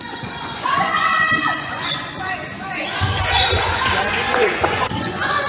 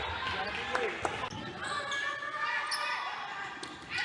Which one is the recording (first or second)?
second